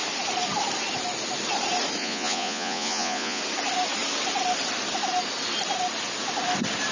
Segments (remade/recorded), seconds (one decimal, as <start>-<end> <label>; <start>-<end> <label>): 0.0-2.0 recorded; 2.0-3.4 remade; 3.4-6.9 recorded